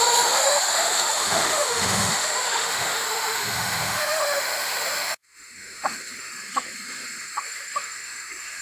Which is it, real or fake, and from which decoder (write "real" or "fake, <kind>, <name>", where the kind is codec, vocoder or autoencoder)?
fake, autoencoder, DAC-VAE